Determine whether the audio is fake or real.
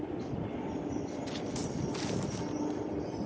real